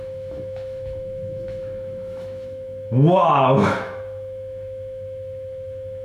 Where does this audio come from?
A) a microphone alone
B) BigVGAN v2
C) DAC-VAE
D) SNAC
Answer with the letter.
C